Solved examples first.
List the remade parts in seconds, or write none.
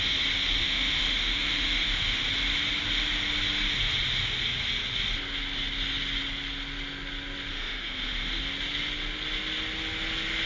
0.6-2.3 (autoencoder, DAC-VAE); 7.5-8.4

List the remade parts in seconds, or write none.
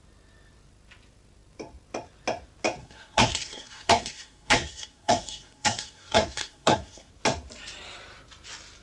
2.8-7.1 (codec, SNAC)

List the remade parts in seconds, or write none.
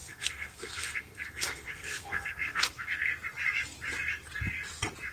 0.0-3.1 (codec, SNAC)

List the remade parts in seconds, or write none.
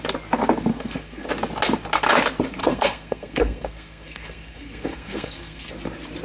0.7-1.3 (codec, SNAC); 2.6-5.7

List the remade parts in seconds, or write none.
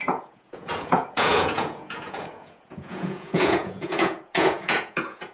0.0-5.3 (vocoder, Vocos)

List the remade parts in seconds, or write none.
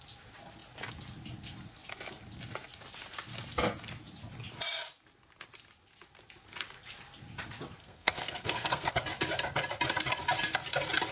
7.8-8.9 (codec, SNAC)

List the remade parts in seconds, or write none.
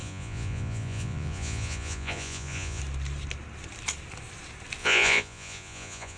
0.0-2.8 (vocoder, Vocos); 4.8-6.2